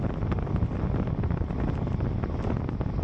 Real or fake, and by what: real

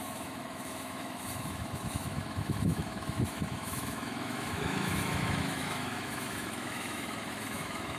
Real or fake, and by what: fake, autoencoder, DAC-VAE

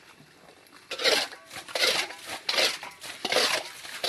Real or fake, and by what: real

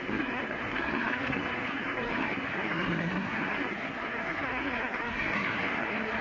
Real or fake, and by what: fake, codec, SNAC